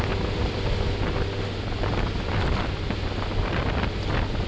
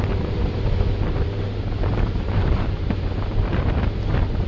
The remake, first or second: second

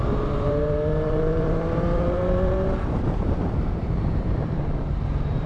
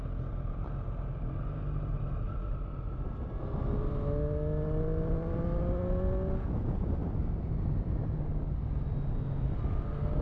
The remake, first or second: first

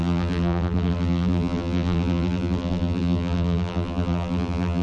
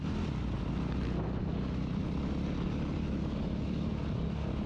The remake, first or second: first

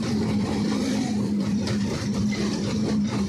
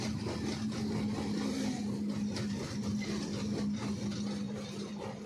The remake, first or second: first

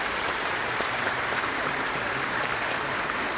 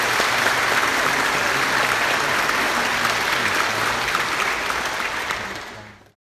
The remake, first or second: first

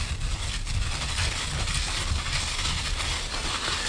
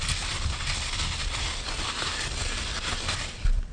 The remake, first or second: second